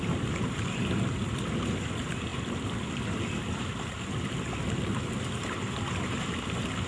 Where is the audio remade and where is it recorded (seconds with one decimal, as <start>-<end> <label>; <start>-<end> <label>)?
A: 0.0-6.9 recorded